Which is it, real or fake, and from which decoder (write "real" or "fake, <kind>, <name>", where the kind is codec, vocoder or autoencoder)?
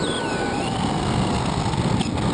real